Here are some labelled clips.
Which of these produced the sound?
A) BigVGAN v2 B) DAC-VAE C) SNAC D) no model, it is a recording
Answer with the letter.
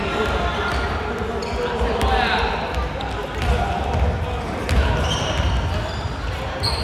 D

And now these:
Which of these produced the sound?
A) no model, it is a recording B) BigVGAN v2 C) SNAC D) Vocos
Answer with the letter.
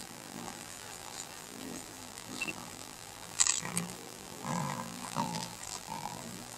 B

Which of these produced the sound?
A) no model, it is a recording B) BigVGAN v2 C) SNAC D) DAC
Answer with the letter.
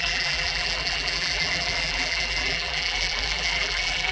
B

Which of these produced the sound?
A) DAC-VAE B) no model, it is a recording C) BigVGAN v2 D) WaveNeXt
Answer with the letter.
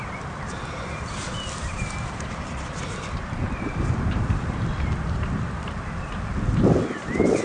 C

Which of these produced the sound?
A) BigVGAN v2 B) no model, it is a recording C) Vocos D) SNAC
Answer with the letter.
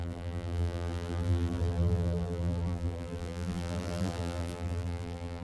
A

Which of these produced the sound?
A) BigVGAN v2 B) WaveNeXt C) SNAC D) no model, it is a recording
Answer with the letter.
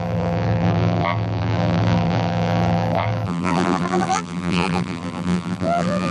A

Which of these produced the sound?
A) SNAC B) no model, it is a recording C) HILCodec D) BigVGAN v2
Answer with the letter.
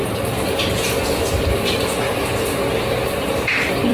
D